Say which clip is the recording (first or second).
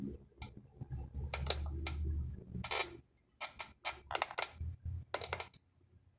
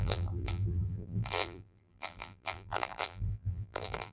first